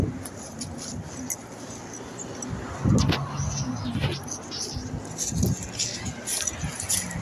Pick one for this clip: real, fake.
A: real